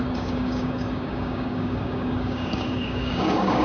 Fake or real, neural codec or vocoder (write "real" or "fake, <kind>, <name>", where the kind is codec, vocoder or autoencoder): fake, codec, DAC